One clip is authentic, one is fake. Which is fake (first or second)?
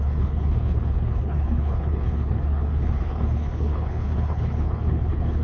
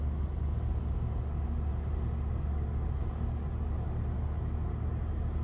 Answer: first